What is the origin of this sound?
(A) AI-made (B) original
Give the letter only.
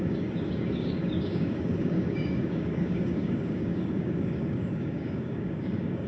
A